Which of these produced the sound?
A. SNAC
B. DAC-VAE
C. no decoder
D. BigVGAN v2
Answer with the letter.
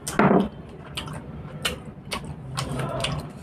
C